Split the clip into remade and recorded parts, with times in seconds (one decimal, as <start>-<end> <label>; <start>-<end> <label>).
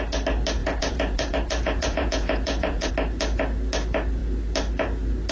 0.0-0.6 recorded; 0.6-2.9 remade; 2.9-5.3 recorded